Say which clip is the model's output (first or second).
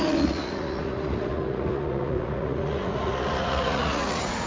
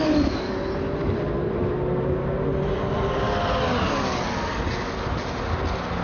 first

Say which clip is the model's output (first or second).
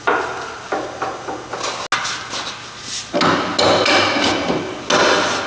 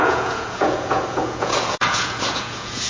second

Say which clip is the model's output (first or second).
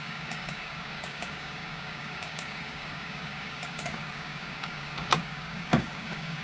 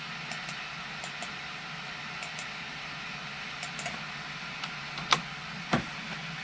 first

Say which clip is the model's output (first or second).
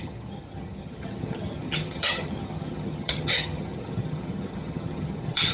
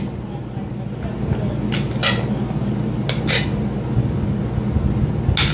first